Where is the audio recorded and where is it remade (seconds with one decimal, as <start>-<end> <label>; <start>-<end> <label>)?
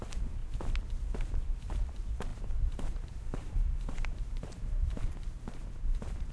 0.0-0.4 remade; 0.4-1.7 recorded; 1.7-6.3 remade